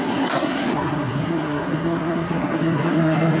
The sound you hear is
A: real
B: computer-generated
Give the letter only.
B